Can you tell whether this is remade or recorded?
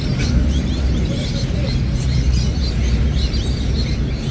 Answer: remade